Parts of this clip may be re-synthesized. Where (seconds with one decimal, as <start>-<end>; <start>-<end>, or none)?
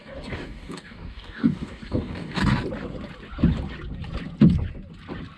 0.0-2.4